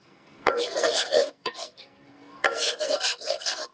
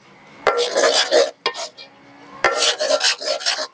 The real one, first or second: second